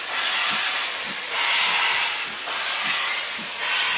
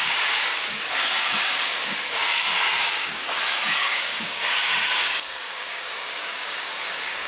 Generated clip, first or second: second